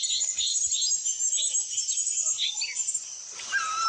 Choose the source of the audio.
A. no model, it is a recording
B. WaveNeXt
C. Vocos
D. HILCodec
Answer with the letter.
A